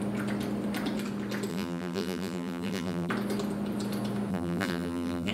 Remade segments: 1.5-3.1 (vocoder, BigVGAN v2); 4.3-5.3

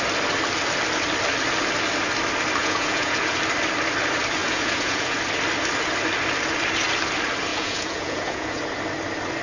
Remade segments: 2.6-3.4 (vocoder, Vocos); 4.4-5.2; 7.5-8.6

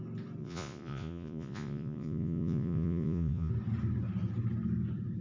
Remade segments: 0.4-3.5 (vocoder, Vocos)

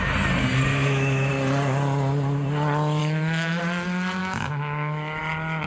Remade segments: 0.7-1.3 (autoencoder, DAC-VAE); 3.0-3.6; 4.2-5.2

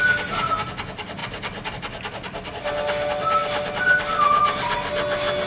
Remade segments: none

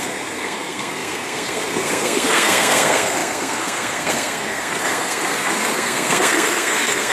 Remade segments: 0.0-7.1 (codec, SNAC)

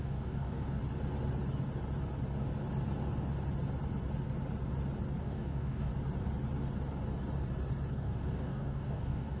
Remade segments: 0.0-0.8 (codec, DAC); 5.2-5.9; 7.9-9.4

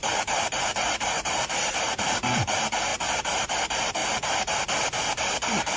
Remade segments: 4.0-4.6 (vocoder, BigVGAN v2)